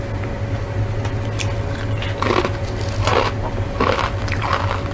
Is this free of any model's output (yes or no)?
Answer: yes